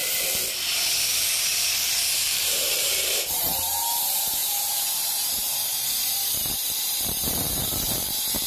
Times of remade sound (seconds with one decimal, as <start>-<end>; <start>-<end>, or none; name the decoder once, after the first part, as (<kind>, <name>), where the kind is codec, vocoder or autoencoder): 2.1-8.5 (vocoder, BigVGAN v2)

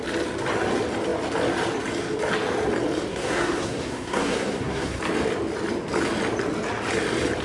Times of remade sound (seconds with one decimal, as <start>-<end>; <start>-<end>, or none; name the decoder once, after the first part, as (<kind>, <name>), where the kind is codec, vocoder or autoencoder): 3.1-5.0 (codec, SNAC)

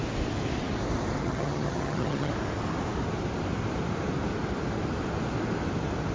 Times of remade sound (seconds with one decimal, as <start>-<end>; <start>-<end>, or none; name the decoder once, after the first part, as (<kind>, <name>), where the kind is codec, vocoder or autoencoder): 1.2-2.3 (vocoder, HiFi-GAN)